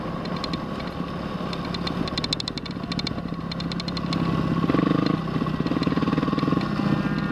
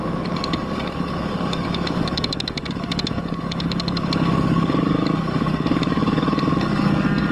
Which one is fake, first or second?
second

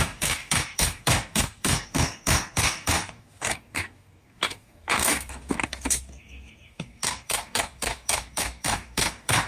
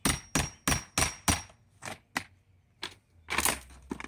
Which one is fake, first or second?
first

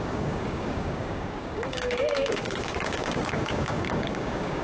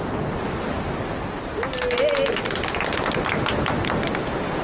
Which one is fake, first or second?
first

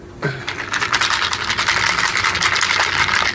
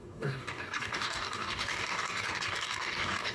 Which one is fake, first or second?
second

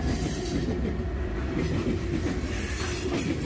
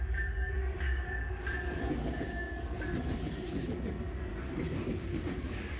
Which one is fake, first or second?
second